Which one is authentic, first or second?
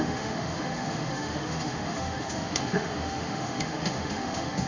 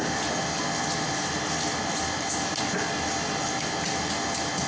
second